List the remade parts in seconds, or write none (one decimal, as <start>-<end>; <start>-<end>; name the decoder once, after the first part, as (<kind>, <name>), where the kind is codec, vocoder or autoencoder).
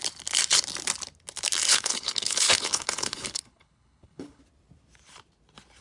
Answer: 1.7-4.4 (codec, HILCodec)